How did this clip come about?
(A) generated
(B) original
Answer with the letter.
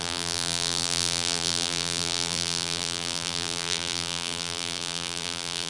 A